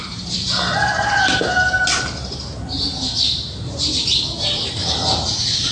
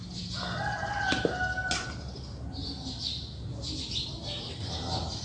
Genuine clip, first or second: second